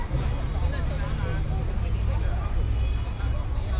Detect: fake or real real